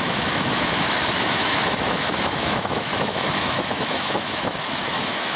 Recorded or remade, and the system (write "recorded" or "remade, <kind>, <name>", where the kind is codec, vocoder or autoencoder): remade, autoencoder, DAC-VAE